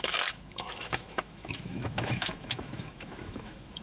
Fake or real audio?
fake